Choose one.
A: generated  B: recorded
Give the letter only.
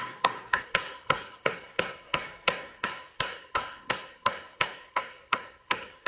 A